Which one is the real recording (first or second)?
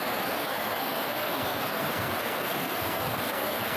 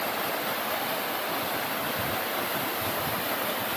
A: second